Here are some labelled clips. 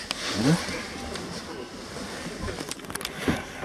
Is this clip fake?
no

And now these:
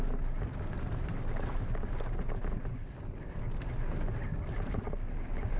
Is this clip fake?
no